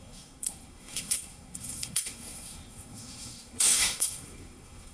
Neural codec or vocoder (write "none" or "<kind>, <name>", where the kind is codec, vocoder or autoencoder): codec, SNAC